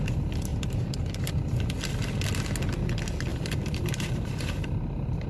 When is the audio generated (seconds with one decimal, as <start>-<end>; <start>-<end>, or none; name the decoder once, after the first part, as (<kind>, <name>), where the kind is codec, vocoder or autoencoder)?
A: 0.5-1.3 (vocoder, BigVGAN v2); 3.3-5.3